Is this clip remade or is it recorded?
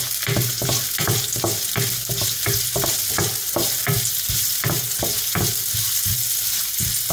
recorded